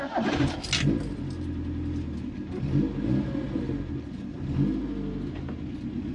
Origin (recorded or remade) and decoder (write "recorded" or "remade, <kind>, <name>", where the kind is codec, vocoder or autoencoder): recorded